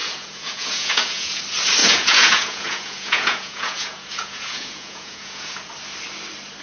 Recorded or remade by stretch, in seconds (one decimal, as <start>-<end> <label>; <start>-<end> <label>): 0.0-1.4 remade; 1.4-1.8 recorded; 1.8-5.7 remade; 5.7-6.6 recorded

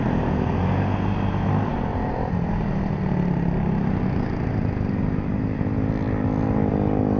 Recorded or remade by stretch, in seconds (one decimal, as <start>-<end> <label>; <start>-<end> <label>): 0.0-1.7 recorded; 1.7-2.9 remade; 2.9-7.2 recorded

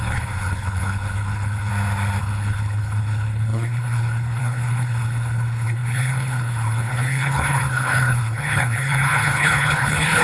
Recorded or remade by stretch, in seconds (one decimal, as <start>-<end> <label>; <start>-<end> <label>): 0.0-1.7 remade; 1.7-2.2 recorded; 2.2-10.2 remade

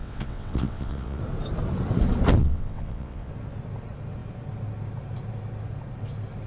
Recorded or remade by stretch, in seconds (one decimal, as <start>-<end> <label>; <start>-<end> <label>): 0.0-1.2 remade; 1.2-2.4 recorded; 2.4-3.3 remade; 3.3-6.5 recorded

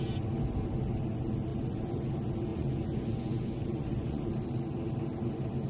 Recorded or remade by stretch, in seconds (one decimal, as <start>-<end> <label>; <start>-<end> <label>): 0.0-1.5 recorded; 1.5-2.1 remade; 2.1-2.5 recorded; 2.5-4.3 remade; 4.3-5.7 recorded

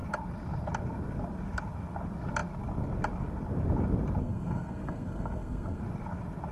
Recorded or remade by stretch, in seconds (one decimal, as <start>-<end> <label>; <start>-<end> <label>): 0.0-4.2 recorded; 4.2-5.8 remade; 5.8-6.5 recorded

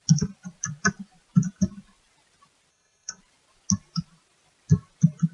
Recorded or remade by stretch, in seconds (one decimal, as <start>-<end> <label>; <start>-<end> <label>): 0.0-2.7 recorded; 2.7-3.2 remade; 3.2-5.3 recorded

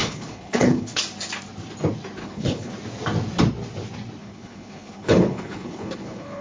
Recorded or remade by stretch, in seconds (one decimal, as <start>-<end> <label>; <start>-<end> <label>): 0.0-1.0 remade; 1.0-2.2 recorded; 2.2-2.7 remade; 2.7-4.2 recorded; 4.2-6.4 remade